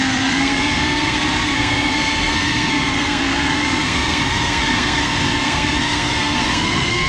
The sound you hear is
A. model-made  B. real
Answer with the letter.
A